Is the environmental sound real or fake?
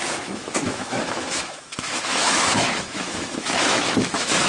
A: fake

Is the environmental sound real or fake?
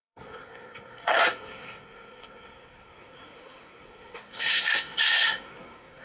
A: fake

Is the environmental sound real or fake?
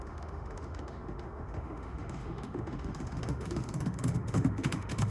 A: fake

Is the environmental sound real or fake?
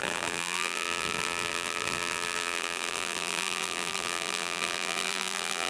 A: fake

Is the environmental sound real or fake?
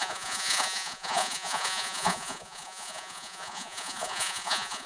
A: fake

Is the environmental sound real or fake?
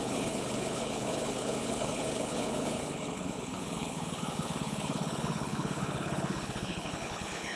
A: fake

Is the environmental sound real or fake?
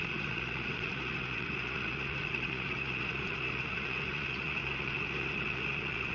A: fake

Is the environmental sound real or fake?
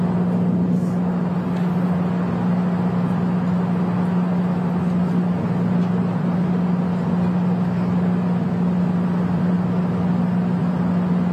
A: real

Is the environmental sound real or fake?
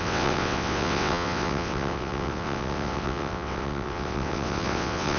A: fake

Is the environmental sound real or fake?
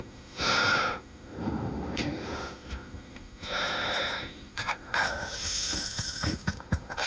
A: fake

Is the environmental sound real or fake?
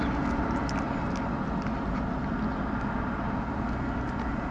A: real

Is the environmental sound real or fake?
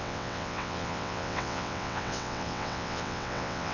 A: fake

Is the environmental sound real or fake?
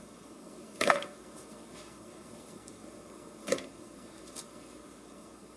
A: fake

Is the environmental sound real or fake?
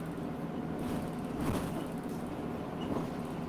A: real